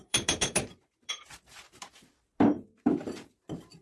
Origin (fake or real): fake